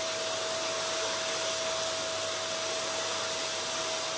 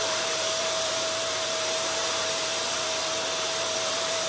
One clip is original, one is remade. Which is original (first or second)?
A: first